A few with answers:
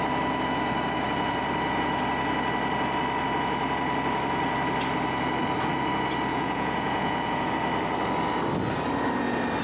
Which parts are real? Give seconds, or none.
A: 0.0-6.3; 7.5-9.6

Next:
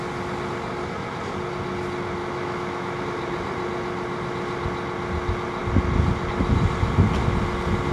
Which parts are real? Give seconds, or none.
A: 0.0-2.2; 3.0-7.9

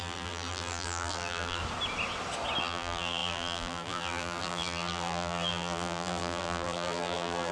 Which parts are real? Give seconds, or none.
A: 1.6-2.6

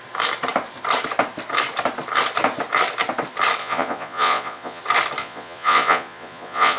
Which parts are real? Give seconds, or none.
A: 0.0-3.6; 4.8-5.2

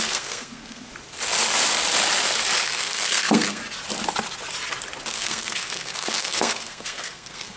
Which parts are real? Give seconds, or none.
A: 0.9-2.6; 3.6-5.1

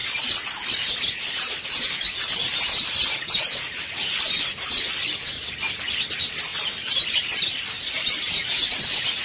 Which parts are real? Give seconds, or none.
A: 0.0-9.2

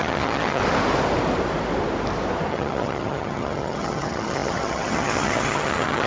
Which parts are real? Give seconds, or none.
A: 0.6-2.5

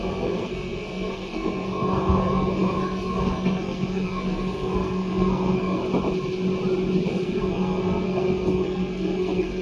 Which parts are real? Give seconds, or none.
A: 5.8-7.1